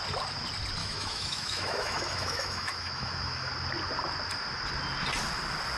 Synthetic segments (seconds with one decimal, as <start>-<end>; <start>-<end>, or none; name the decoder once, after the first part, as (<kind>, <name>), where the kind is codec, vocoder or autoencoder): 0.8-3.5 (autoencoder, DAC-VAE)